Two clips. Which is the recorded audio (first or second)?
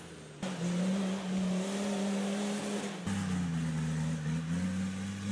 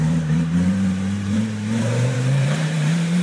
first